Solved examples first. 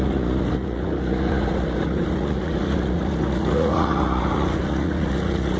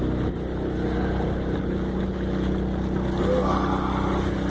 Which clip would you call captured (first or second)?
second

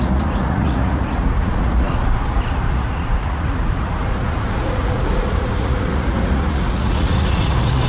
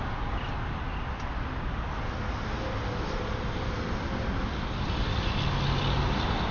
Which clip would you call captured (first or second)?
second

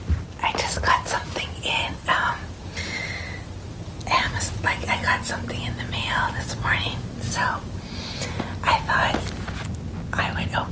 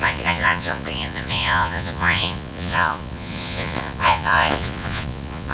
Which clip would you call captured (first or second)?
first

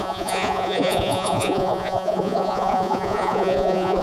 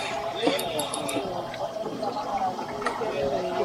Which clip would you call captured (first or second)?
second